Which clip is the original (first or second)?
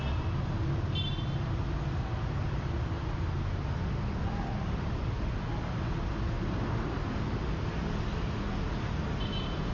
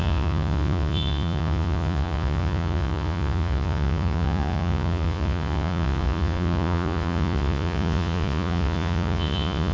first